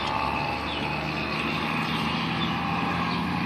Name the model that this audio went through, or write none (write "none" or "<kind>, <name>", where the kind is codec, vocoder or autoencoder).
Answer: none